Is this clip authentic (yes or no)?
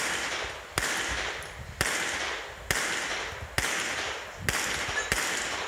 yes